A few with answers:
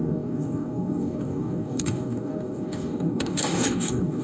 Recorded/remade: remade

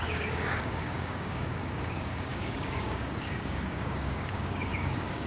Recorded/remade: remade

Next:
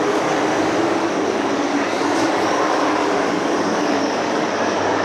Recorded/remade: remade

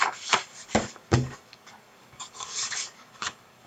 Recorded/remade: remade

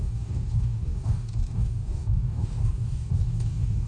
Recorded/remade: remade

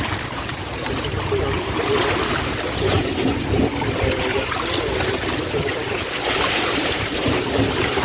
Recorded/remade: recorded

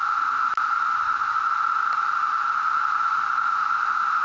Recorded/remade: recorded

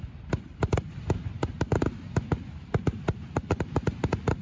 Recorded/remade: recorded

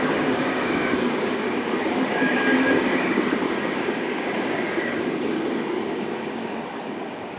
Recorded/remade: remade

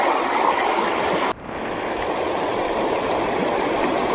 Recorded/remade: recorded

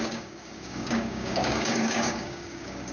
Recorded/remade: remade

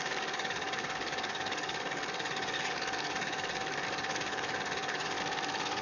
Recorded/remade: remade